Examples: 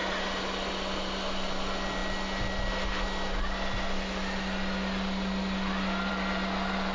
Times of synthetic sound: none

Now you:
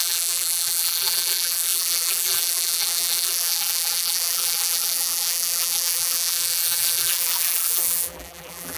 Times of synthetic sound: 0.0-8.8 (vocoder, BigVGAN v2)

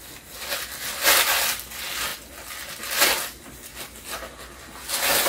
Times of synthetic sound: none